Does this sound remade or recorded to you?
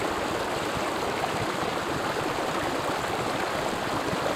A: recorded